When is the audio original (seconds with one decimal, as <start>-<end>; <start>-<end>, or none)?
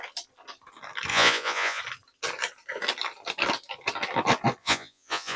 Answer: 0.0-1.1; 1.8-4.6